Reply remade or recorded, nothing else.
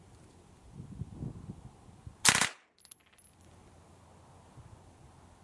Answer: recorded